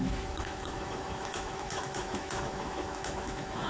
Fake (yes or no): yes